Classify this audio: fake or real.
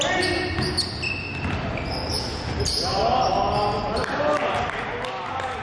real